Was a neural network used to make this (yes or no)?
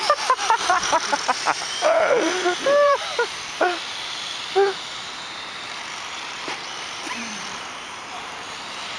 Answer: yes